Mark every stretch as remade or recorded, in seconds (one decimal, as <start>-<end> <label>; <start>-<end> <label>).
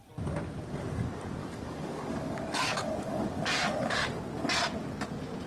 0.0-1.4 recorded; 1.4-4.2 remade; 4.2-5.5 recorded